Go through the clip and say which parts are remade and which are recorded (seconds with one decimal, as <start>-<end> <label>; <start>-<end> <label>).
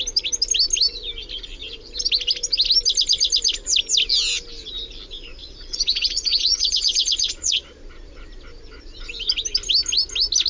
0.0-5.4 recorded; 5.4-7.8 remade; 7.8-10.5 recorded